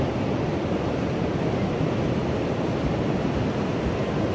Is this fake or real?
real